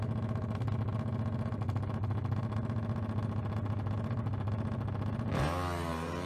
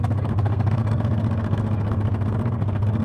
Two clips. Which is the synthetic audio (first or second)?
second